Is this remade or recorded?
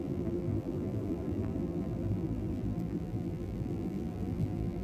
remade